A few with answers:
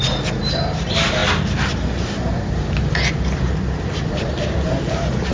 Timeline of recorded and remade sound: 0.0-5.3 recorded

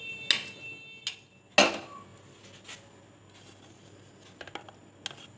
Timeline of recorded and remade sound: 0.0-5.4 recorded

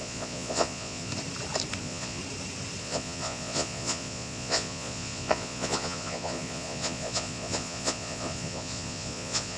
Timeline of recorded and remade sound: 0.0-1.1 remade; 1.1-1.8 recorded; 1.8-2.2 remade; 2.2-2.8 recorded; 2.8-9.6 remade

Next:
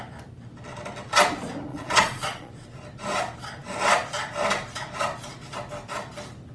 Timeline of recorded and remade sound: 0.0-1.7 recorded; 1.7-2.5 remade; 2.5-6.5 recorded